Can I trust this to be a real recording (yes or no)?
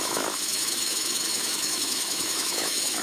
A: no